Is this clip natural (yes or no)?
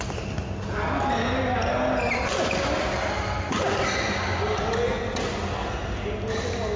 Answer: yes